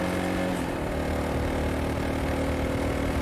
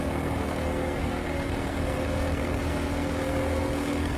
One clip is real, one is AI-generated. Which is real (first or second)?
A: first